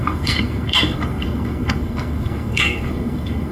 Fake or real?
fake